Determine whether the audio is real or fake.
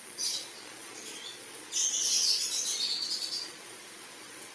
fake